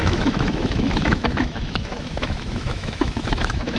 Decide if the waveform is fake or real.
fake